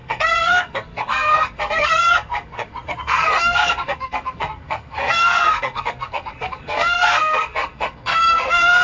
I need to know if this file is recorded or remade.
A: remade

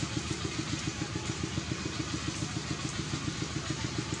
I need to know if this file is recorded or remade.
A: recorded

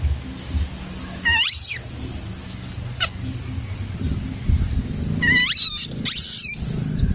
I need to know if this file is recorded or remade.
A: recorded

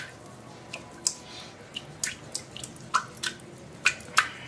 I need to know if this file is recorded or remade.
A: recorded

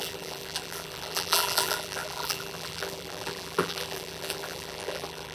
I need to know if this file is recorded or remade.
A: remade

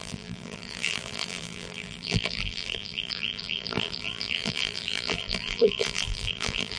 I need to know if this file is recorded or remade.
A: remade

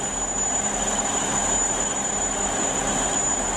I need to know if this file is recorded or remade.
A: recorded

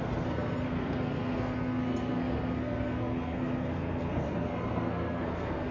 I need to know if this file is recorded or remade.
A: remade